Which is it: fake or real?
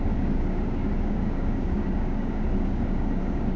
fake